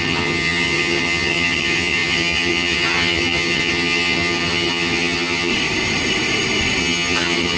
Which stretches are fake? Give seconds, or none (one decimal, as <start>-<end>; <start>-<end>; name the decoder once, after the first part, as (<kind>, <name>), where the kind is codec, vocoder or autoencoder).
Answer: 0.0-5.5 (vocoder, HiFi-GAN); 6.8-7.6